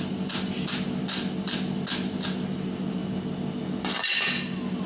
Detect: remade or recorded recorded